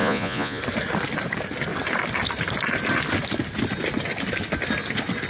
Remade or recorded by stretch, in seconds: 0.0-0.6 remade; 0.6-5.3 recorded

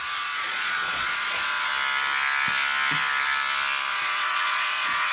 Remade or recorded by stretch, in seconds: 0.0-1.7 remade; 1.7-3.9 recorded; 3.9-5.1 remade

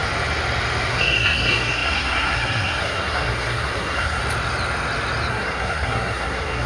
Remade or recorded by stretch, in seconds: 0.0-0.9 recorded; 0.9-4.2 remade; 4.2-5.3 recorded; 5.3-6.7 remade